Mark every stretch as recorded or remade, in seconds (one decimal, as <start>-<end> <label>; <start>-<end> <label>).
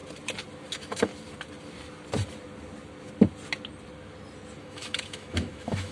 0.0-0.7 recorded; 0.7-1.1 remade; 1.1-4.6 recorded; 4.6-5.9 remade